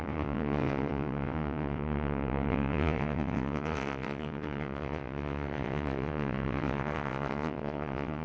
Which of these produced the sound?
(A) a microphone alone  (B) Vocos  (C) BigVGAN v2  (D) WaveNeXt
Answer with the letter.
D